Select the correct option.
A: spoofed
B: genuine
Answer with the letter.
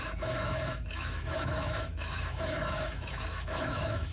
A